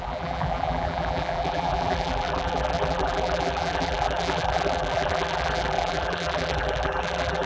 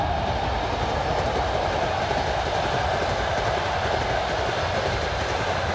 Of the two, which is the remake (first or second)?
first